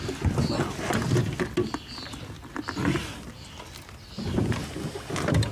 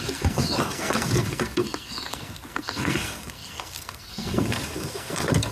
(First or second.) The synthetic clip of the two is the second